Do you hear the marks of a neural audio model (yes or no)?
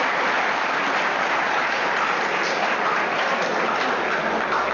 no